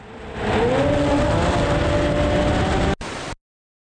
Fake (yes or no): no